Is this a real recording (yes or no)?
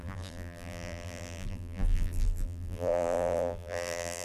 no